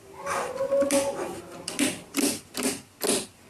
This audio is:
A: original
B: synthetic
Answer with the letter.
A